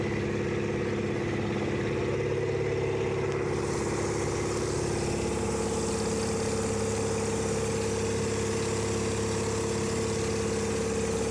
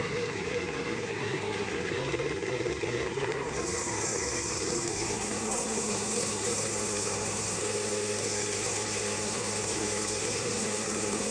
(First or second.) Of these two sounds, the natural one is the first